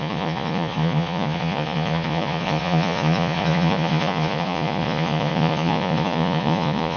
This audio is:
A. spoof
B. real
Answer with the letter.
A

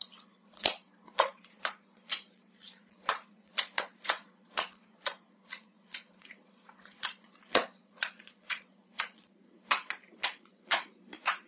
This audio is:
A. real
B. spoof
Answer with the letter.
B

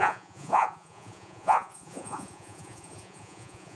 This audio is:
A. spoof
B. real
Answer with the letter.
A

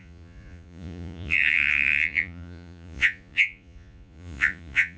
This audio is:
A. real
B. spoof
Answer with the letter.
B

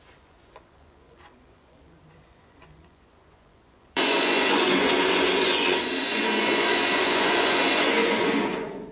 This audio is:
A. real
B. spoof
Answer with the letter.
B